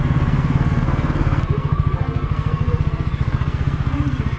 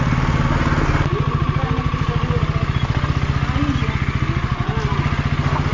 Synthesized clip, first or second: first